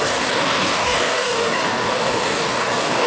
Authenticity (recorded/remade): remade